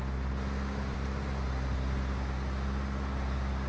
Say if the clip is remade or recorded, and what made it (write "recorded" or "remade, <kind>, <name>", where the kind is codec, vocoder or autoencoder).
recorded